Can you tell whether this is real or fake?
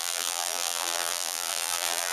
fake